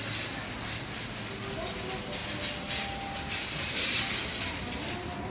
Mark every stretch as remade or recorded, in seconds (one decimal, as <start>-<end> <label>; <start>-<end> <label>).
0.0-5.3 recorded